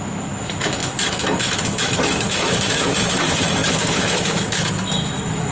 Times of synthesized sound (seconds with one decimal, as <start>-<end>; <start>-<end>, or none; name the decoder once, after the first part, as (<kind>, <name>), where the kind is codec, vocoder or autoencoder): 0.0-5.5 (autoencoder, DAC-VAE)